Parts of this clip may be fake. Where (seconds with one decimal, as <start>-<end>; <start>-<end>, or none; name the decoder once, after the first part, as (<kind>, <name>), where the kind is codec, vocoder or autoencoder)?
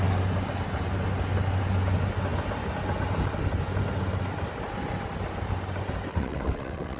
6.1-7.0 (vocoder, WaveNeXt)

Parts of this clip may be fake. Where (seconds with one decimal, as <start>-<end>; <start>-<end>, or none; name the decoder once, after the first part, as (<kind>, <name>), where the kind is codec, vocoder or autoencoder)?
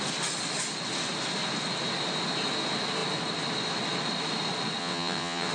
4.8-5.5 (vocoder, WaveNeXt)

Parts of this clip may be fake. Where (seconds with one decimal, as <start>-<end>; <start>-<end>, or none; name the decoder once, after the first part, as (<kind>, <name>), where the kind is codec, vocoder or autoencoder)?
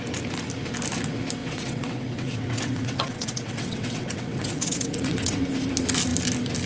1.4-5.4 (vocoder, WaveNeXt)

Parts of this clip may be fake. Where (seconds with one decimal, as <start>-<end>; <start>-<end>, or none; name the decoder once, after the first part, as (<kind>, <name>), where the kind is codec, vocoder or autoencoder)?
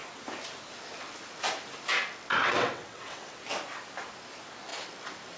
2.4-3.4 (vocoder, WaveNeXt)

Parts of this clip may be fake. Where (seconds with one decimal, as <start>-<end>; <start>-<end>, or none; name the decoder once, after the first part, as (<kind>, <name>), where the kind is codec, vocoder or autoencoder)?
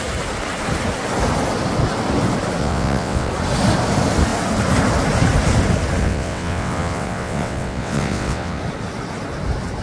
2.6-3.3 (vocoder, WaveNeXt); 6.0-8.6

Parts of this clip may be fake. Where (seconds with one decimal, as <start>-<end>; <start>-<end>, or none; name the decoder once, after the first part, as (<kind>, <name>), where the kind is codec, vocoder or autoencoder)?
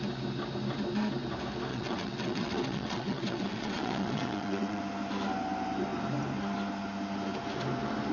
1.7-4.8 (vocoder, WaveNeXt)